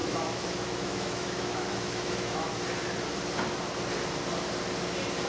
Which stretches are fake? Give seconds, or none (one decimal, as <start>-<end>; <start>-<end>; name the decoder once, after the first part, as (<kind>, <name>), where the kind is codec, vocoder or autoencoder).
0.0-2.5 (autoencoder, DAC-VAE)